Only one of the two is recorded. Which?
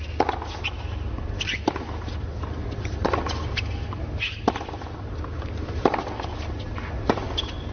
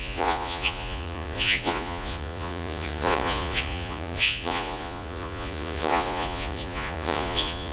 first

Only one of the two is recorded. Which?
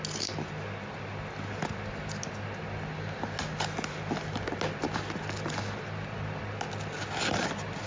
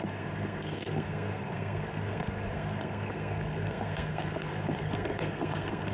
first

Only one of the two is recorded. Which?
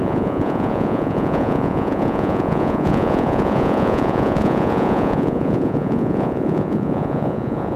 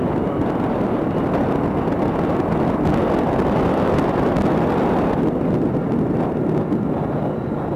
second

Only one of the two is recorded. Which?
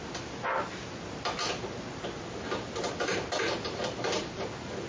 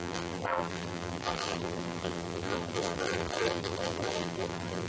first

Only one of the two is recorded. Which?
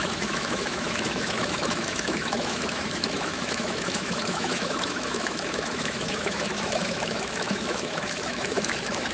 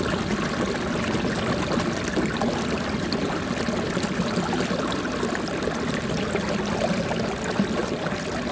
second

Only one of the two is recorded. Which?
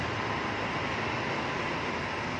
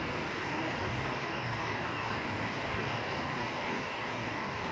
first